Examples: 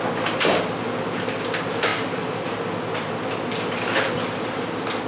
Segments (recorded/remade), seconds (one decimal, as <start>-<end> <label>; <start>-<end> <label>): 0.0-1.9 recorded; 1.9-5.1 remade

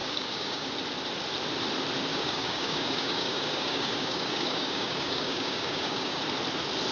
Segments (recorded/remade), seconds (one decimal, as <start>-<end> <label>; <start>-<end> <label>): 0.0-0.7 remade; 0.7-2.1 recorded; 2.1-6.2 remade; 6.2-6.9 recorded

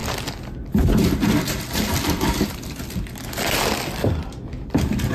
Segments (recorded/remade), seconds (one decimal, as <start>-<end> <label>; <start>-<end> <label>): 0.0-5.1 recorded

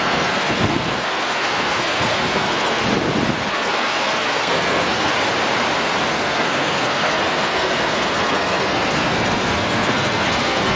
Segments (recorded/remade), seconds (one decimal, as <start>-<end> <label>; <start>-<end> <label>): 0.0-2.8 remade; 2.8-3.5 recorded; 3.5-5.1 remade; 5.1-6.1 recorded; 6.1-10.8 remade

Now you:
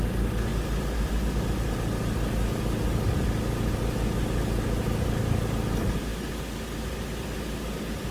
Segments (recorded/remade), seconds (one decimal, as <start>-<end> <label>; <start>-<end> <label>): 0.0-8.1 recorded

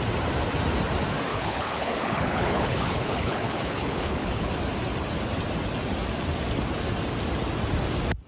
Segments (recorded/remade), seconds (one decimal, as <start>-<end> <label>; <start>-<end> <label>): 0.0-1.3 recorded; 1.3-4.5 remade; 4.5-8.3 recorded

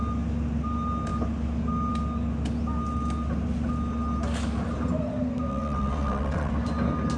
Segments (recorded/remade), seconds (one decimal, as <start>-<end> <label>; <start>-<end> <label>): 0.0-5.5 recorded; 5.5-6.5 remade; 6.5-7.2 recorded